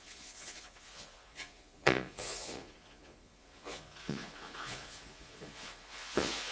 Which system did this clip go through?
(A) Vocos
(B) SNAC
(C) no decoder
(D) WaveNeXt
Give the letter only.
A